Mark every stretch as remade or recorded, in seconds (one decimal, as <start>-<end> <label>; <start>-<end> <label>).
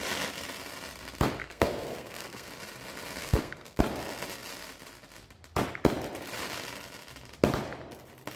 0.0-1.4 recorded; 1.4-2.5 remade; 2.5-3.2 recorded; 3.2-3.8 remade; 3.8-8.4 recorded